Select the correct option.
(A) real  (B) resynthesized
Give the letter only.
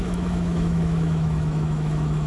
B